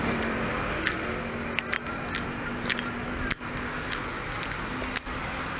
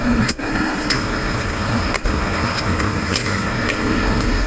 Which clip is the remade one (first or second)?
second